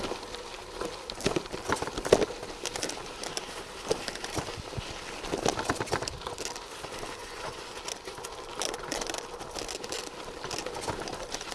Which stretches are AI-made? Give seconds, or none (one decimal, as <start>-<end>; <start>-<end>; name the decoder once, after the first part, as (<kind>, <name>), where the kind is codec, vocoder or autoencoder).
7.2-7.8 (vocoder, Vocos)